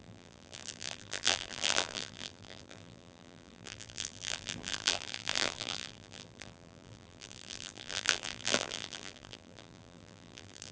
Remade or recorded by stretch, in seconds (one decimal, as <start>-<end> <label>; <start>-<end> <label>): 0.0-10.7 remade